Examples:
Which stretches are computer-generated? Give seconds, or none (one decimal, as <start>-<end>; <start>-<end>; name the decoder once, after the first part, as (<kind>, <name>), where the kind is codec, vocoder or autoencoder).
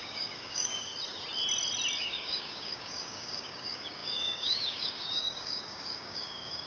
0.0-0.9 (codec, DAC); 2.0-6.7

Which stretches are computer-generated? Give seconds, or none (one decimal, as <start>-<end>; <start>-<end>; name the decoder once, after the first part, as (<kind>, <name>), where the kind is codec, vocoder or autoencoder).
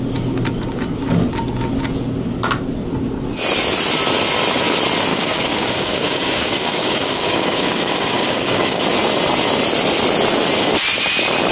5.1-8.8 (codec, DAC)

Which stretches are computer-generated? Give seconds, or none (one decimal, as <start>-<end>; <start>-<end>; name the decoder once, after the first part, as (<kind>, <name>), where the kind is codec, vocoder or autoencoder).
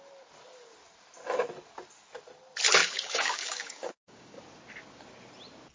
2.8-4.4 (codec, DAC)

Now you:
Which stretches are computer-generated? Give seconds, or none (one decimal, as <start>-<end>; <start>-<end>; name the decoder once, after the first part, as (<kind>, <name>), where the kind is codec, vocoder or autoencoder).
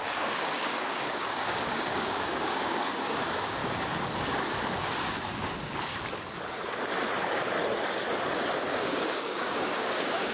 0.0-3.6 (codec, DAC); 8.7-10.3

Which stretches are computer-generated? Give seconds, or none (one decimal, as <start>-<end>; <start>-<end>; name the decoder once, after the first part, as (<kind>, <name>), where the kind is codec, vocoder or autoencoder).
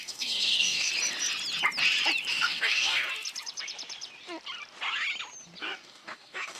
0.0-0.9 (codec, DAC); 2.3-3.1; 5.6-6.6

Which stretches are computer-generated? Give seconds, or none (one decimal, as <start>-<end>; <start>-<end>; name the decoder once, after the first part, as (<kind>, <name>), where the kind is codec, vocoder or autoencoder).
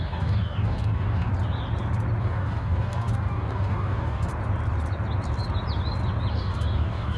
0.0-1.3 (codec, DAC); 2.2-4.3; 6.3-7.2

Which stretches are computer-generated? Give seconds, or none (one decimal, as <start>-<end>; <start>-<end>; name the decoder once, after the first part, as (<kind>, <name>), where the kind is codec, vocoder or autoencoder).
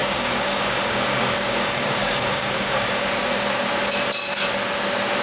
0.0-3.1 (codec, DAC)